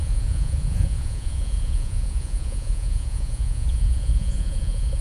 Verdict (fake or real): fake